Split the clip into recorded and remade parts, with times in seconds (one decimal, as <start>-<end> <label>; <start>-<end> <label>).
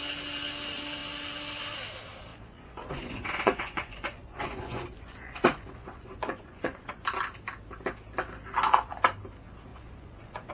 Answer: 0.0-2.3 recorded; 2.3-6.9 remade; 6.9-9.7 recorded; 9.7-10.5 remade